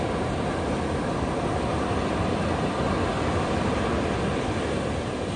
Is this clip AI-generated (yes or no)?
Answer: no